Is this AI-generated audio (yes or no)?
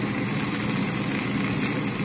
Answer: no